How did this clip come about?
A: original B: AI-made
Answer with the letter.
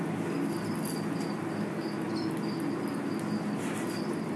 A